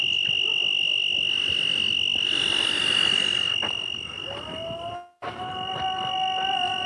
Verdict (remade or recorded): recorded